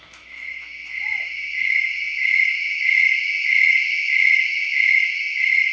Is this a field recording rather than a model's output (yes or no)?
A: no